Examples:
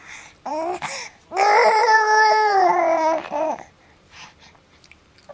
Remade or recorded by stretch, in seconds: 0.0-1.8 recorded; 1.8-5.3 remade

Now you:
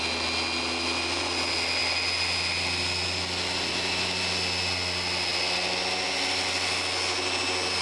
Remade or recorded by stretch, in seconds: 0.0-7.8 recorded

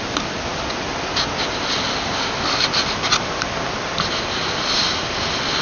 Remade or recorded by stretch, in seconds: 0.0-5.6 recorded

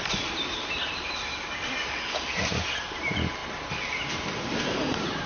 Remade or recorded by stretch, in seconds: 0.0-3.4 remade; 3.4-4.0 recorded; 4.0-5.3 remade

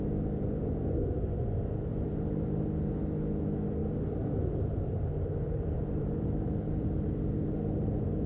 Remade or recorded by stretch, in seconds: 0.0-1.9 recorded; 1.9-2.9 remade; 2.9-3.8 recorded; 3.8-7.1 remade; 7.1-8.3 recorded

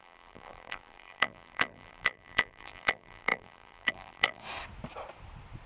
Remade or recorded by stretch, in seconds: 0.0-4.4 remade; 4.4-5.7 recorded